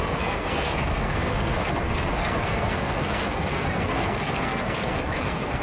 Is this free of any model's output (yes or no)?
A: no